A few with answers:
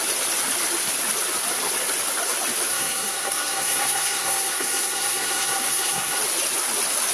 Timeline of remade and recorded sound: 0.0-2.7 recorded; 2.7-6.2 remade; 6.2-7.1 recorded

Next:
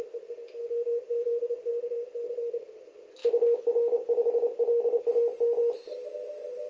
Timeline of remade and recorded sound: 0.0-6.7 recorded

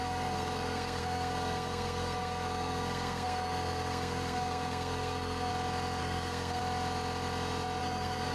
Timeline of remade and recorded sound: 0.0-5.5 remade; 5.5-6.0 recorded; 6.0-6.6 remade; 6.6-7.8 recorded; 7.8-8.3 remade

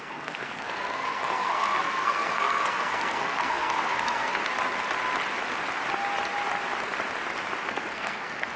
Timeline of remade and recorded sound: 0.0-4.4 remade; 4.4-7.7 recorded; 7.7-8.6 remade

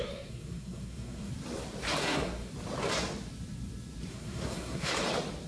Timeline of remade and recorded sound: 0.0-1.3 remade; 1.3-2.0 recorded; 2.0-2.5 remade; 2.5-4.1 recorded; 4.1-4.9 remade; 4.9-5.5 recorded